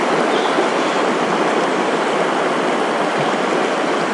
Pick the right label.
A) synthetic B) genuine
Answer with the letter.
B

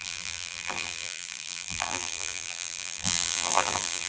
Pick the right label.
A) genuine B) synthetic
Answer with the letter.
B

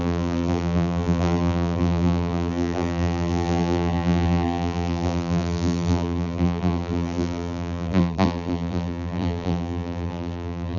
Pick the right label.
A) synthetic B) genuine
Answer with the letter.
A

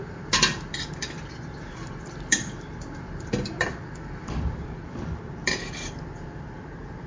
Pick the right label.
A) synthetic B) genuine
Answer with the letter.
A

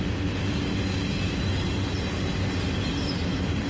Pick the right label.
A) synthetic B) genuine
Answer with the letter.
B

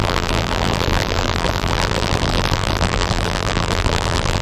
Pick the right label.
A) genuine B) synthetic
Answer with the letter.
B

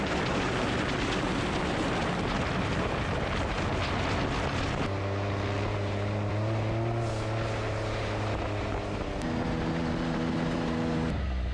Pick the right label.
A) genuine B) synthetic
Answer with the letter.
A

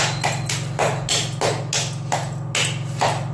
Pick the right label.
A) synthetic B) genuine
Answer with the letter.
B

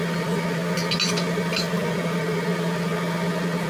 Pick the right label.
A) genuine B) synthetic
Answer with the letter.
A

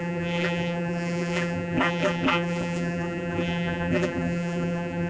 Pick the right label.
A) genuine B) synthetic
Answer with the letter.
B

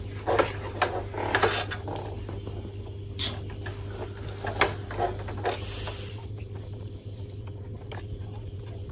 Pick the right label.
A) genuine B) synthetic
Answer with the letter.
A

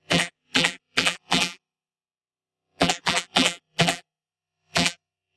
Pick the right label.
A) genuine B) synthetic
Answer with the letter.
B